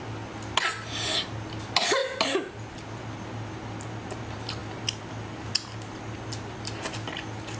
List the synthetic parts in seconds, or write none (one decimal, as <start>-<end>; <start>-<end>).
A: none